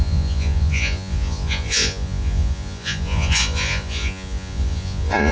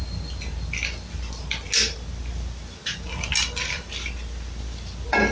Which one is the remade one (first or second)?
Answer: first